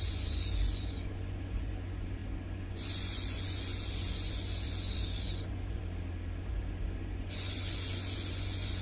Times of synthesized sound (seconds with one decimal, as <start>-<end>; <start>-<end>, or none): 0.0-5.8; 6.4-8.8